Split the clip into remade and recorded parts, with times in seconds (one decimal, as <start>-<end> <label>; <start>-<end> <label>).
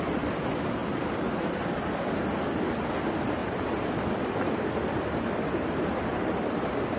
0.0-3.4 recorded; 3.4-7.0 remade